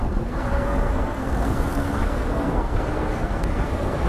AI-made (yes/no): yes